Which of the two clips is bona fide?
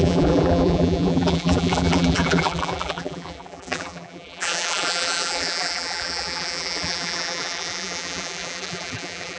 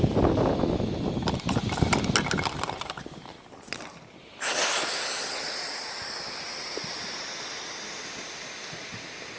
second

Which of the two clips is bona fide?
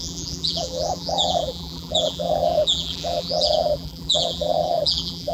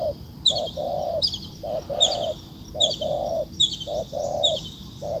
second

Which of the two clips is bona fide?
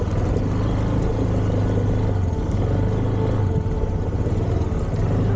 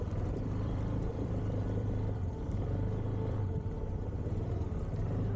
first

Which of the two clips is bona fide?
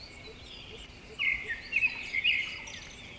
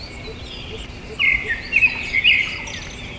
second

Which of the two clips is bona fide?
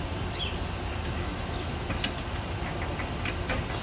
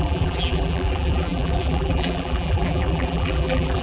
first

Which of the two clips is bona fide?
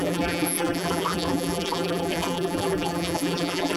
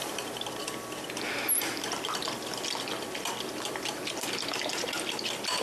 second